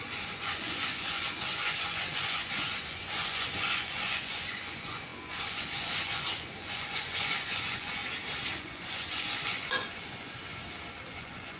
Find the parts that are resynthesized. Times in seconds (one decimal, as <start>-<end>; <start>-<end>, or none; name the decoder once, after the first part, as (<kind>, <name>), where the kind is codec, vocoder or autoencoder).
0.0-8.0 (vocoder, Vocos); 8.6-10.6; 11.1-11.6